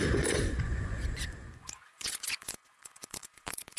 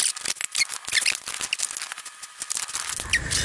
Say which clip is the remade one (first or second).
first